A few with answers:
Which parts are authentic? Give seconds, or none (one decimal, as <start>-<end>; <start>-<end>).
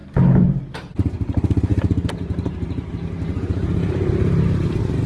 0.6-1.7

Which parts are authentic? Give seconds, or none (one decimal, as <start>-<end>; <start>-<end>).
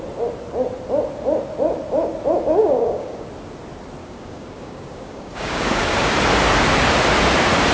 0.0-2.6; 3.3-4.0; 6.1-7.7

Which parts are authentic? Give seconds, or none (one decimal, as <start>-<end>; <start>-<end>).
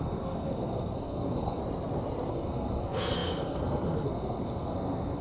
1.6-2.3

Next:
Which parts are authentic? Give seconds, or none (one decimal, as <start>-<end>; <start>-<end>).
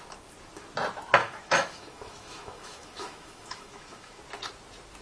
0.0-1.2; 4.2-5.0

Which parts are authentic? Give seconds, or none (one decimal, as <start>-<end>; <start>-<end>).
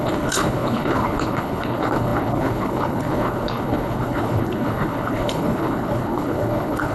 none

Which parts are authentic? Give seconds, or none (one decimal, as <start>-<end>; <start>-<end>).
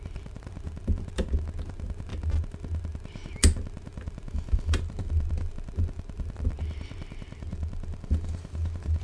0.0-9.0